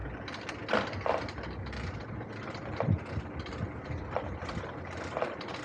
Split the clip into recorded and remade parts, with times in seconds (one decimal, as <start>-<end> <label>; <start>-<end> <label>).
0.0-5.6 recorded